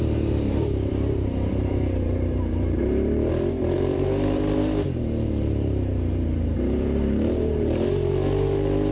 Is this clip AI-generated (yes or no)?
yes